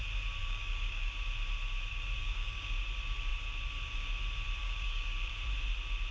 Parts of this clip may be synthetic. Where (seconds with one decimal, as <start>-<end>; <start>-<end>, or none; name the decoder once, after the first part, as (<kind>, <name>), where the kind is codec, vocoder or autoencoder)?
0.4-1.1 (codec, DAC); 2.2-2.8; 4.6-5.3